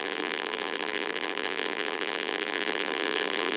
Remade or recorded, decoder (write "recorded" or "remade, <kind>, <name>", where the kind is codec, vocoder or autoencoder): remade, vocoder, BigVGAN v2